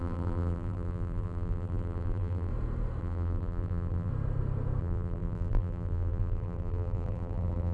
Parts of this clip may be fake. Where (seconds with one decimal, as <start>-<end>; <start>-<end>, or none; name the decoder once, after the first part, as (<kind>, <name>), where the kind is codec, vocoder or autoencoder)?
0.0-2.5 (vocoder, BigVGAN v2); 3.0-4.1; 4.8-7.7